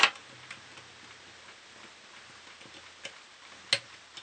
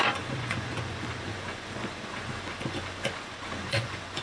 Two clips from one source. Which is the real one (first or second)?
first